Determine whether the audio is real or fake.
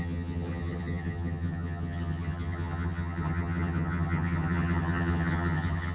fake